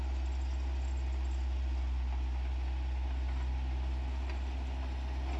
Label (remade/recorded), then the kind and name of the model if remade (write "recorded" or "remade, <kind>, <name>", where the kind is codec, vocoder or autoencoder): recorded